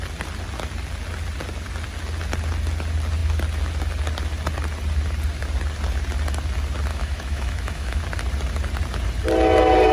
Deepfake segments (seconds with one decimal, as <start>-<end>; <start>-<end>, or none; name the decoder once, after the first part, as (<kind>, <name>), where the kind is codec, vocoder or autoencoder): 6.9-8.0 (autoencoder, DAC-VAE)